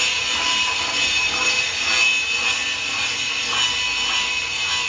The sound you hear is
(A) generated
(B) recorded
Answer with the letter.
B